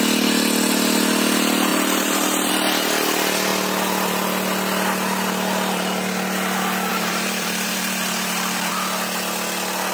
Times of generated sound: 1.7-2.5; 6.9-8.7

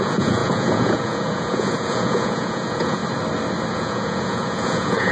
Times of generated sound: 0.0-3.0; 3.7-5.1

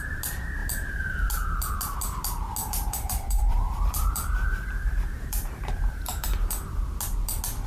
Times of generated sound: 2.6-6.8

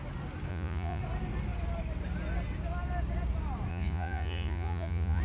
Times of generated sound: 0.5-1.0; 3.7-5.2

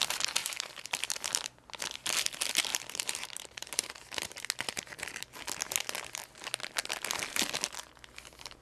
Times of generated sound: 0.4-1.0; 2.7-4.4

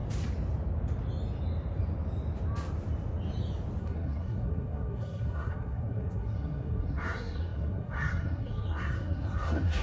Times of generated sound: 3.8-9.8